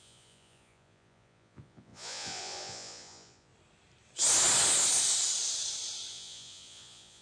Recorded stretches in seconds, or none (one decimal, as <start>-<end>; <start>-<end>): 3.5-6.1